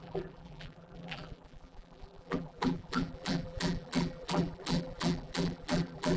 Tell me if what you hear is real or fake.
fake